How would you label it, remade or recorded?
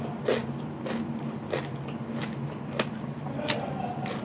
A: recorded